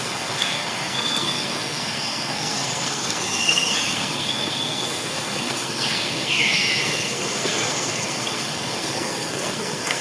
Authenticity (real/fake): fake